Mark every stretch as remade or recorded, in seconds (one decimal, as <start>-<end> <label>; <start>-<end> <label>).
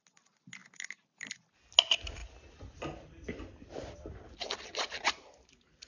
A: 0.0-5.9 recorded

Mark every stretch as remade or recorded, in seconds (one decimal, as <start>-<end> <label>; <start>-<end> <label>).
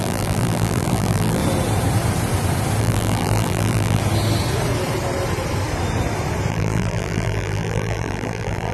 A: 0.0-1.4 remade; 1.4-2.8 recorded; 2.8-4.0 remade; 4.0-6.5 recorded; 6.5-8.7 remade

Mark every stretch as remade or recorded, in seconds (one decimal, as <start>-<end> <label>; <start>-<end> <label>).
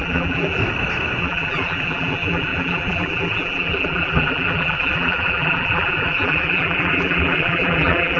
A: 0.0-0.6 remade; 0.6-1.2 recorded; 1.2-8.2 remade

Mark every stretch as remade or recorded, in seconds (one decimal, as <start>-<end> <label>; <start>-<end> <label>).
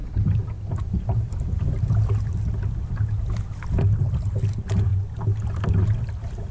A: 0.0-6.5 recorded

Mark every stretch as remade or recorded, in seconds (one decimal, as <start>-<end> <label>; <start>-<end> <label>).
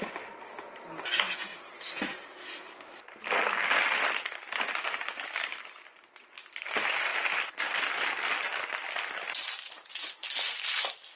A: 0.0-11.2 recorded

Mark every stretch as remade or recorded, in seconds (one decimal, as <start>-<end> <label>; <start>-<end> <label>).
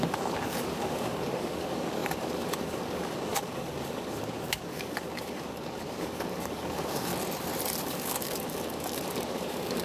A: 0.0-7.1 remade; 7.1-7.8 recorded; 7.8-9.8 remade